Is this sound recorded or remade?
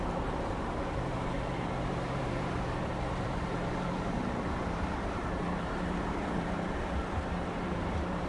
remade